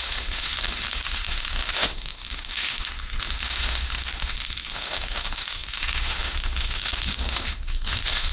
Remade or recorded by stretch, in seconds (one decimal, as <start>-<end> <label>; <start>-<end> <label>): 0.0-8.3 remade